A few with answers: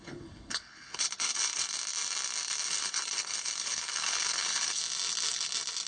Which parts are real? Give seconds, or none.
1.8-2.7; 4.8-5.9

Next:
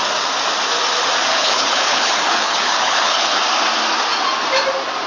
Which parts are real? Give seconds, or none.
0.0-1.3; 3.4-5.1

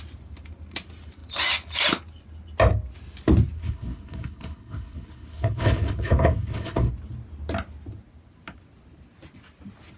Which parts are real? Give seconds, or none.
0.0-3.6; 6.9-10.0

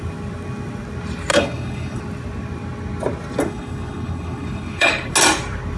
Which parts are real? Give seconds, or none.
0.0-1.3; 2.0-3.4; 4.9-5.8

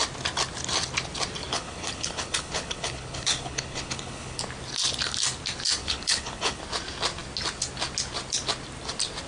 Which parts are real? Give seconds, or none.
0.0-1.5; 4.4-5.8; 6.6-9.3

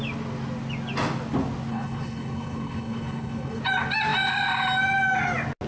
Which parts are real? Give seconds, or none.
0.0-1.7; 3.6-5.7

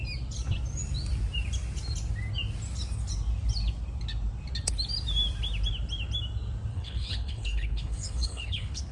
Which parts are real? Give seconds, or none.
0.0-6.7

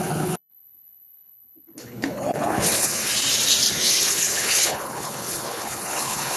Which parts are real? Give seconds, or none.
3.1-3.7